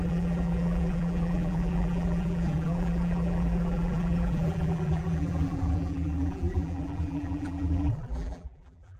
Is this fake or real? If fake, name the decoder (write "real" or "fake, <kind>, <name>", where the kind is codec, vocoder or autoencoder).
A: fake, vocoder, BigVGAN v2